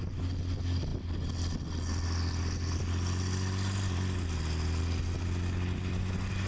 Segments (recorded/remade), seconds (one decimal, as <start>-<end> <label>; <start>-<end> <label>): 0.0-6.5 recorded